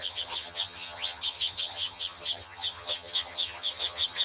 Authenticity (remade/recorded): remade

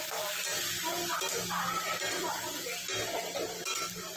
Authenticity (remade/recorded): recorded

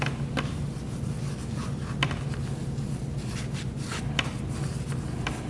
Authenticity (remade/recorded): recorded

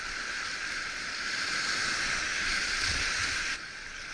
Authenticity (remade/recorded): recorded